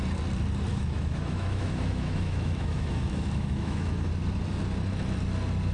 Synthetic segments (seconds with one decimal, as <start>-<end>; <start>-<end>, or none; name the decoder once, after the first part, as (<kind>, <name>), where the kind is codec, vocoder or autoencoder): 0.7-4.1 (autoencoder, DAC-VAE)